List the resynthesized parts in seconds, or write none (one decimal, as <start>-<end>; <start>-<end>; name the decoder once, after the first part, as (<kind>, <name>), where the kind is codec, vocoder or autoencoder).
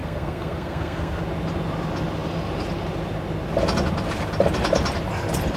0.0-1.2 (codec, SNAC)